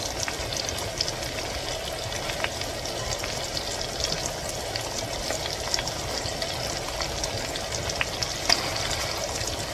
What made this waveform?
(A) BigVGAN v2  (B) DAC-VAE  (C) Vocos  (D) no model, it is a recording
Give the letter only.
D